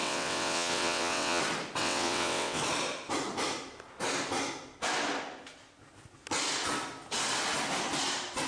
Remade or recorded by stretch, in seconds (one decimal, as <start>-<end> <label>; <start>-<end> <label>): 0.0-1.4 remade; 1.4-1.8 recorded; 1.8-2.6 remade; 2.6-8.5 recorded